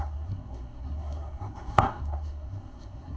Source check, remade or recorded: remade